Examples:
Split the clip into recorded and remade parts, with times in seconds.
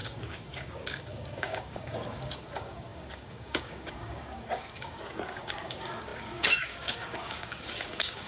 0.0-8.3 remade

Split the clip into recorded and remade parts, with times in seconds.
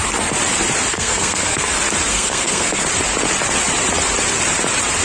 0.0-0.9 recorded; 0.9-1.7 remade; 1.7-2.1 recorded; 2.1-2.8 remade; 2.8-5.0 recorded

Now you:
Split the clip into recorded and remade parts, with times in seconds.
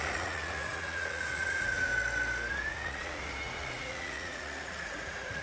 0.0-1.9 remade; 1.9-2.5 recorded; 2.5-5.4 remade